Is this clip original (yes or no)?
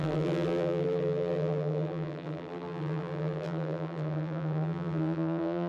no